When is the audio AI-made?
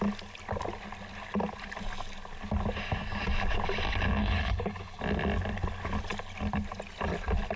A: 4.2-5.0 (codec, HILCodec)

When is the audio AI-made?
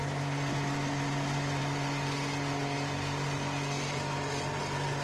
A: none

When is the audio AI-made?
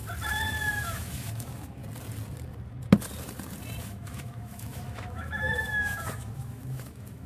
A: 0.7-1.8 (autoencoder, DAC-VAE); 3.8-7.3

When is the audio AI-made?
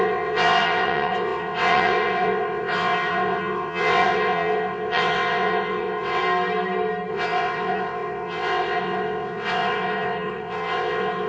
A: 0.0-6.2 (vocoder, WaveNeXt); 7.1-11.3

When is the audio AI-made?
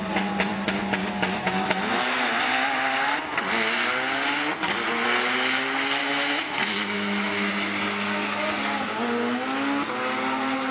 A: 1.0-2.4 (autoencoder, DAC-VAE); 6.0-7.5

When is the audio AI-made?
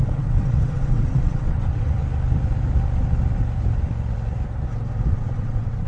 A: 0.0-2.0 (vocoder, WaveNeXt); 5.1-5.9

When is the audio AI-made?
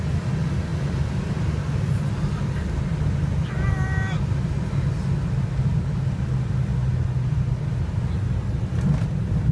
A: none